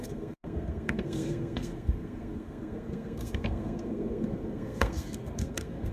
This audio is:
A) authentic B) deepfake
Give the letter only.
B